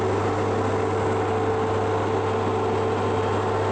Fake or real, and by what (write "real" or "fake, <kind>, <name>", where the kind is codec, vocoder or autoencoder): real